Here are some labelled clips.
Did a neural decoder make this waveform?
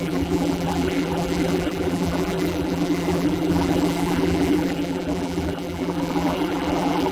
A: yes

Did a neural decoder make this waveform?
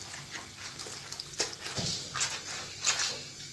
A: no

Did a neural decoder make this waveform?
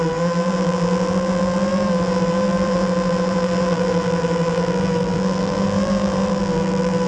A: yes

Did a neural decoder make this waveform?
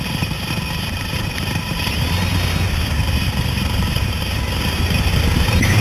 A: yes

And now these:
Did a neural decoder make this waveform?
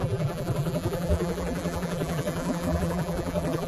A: yes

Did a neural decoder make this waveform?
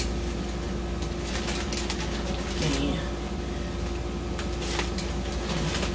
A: no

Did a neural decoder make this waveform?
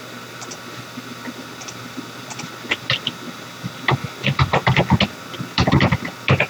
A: no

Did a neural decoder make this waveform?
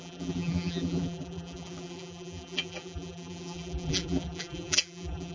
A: yes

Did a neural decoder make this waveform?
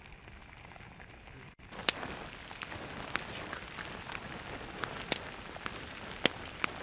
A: no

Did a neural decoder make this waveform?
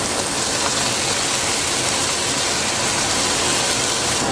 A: no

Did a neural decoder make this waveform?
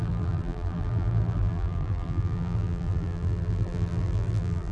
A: yes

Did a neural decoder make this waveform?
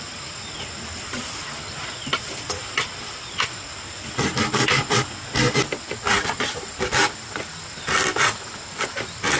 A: yes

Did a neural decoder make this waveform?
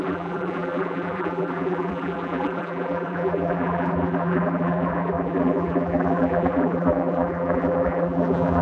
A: yes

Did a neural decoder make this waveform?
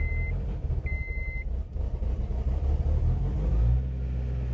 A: no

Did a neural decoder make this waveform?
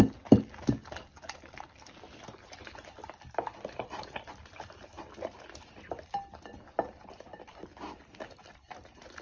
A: no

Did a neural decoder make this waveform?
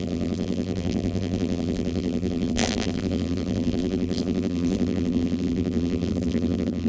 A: yes